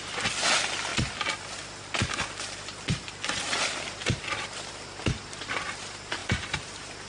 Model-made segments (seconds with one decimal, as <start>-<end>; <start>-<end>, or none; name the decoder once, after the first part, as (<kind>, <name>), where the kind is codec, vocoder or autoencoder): 6.2-7.1 (vocoder, BigVGAN v2)